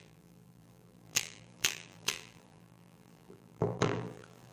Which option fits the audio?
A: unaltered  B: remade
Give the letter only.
B